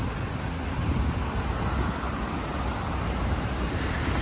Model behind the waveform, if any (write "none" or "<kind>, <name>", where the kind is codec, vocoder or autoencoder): none